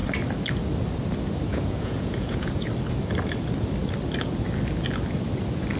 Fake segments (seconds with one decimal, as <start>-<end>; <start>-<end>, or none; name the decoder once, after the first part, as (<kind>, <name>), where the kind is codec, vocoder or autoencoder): 1.5-2.7 (vocoder, Vocos)

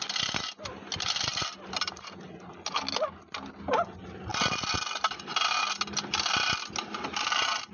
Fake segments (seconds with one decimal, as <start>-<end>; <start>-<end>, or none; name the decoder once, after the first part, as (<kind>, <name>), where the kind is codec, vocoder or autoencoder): none

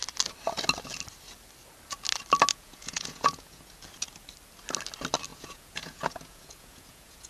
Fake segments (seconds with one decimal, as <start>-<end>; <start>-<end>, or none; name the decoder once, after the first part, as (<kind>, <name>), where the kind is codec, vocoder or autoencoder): 2.5-3.7 (vocoder, Vocos); 5.3-7.3